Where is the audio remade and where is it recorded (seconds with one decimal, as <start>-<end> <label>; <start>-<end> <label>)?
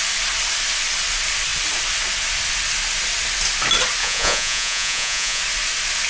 0.0-4.0 recorded; 4.0-5.4 remade; 5.4-6.1 recorded